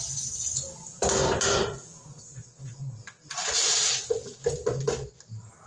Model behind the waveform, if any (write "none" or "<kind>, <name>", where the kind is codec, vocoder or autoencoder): none